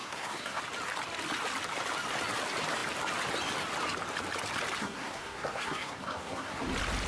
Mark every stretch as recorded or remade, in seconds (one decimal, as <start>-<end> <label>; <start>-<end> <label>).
0.0-0.6 remade; 0.6-4.8 recorded; 4.8-6.6 remade; 6.6-7.1 recorded